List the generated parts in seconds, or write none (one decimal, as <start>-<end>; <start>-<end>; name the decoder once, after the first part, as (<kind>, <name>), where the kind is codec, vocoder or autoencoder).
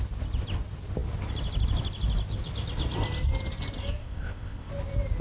4.0-4.7 (codec, ZipCodec)